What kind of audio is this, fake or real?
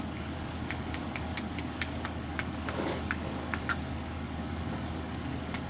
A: fake